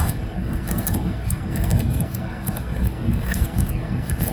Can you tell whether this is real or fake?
fake